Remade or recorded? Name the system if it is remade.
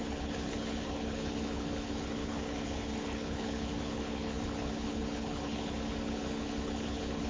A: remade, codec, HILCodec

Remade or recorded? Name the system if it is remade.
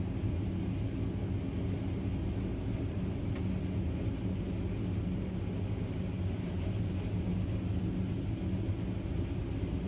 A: recorded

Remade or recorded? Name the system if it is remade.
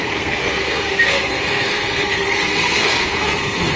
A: remade, codec, SNAC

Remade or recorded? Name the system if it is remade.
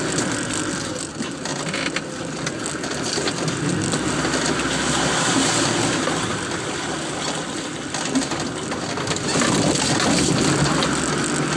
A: recorded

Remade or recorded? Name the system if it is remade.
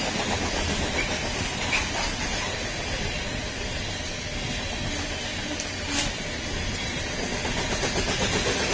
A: recorded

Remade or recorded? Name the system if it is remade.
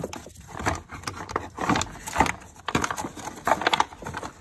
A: recorded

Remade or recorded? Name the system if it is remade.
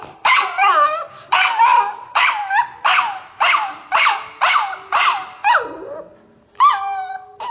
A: recorded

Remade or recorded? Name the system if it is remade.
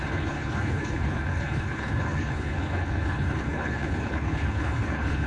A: remade, codec, HILCodec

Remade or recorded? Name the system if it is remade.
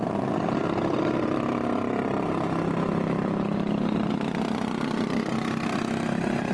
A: recorded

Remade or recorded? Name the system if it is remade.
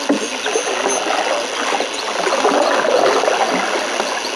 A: recorded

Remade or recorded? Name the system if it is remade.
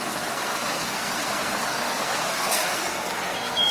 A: remade, codec, SNAC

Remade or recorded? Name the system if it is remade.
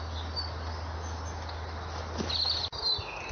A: recorded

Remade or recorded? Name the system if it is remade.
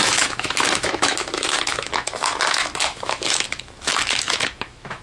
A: remade, autoencoder, DAC-VAE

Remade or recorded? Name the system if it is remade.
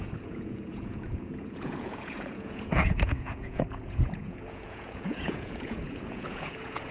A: remade, vocoder, Vocos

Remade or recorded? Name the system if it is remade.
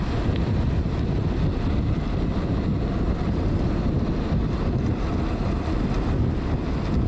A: recorded